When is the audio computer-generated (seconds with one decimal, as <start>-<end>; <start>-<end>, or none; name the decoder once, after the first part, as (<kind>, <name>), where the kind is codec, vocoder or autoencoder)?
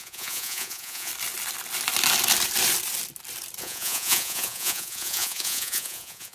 0.0-1.1 (vocoder, Vocos); 3.6-6.3